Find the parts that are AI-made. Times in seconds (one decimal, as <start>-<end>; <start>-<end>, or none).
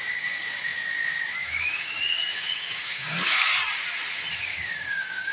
0.0-3.5; 4.4-5.3